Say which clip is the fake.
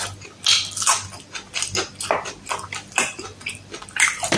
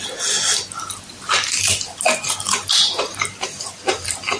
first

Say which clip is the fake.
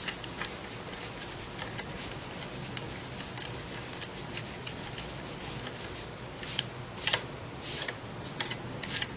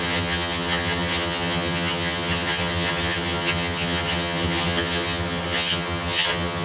second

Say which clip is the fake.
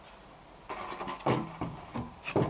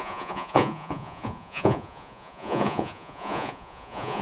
second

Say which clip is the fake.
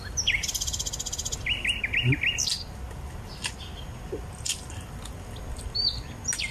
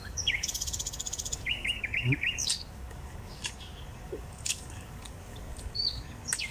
second